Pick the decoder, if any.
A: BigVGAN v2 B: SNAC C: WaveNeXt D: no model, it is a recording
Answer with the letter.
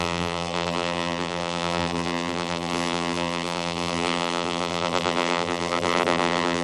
A